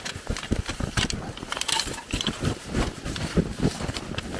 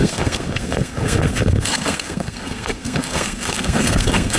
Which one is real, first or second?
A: first